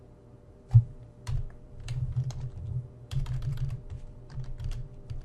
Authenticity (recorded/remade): remade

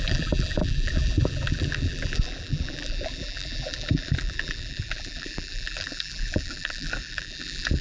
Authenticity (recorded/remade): remade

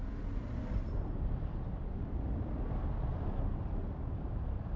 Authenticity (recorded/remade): recorded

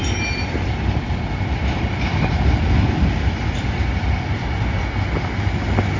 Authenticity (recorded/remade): recorded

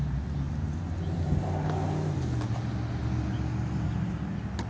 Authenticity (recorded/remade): recorded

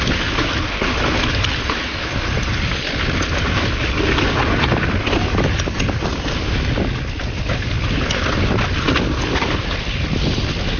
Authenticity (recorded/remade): recorded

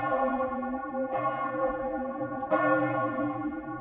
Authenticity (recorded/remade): remade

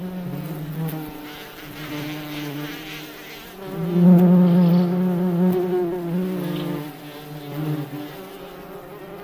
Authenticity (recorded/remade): recorded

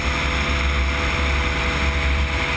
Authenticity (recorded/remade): recorded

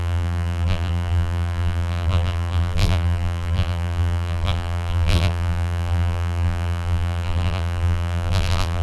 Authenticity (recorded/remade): remade